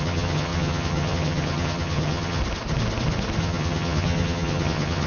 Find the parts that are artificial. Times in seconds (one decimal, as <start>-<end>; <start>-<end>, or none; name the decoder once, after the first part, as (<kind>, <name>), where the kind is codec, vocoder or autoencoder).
0.0-2.4 (vocoder, HiFi-GAN); 3.4-5.1